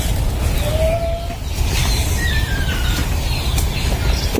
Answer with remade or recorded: recorded